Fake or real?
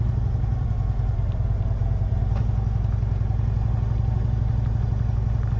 real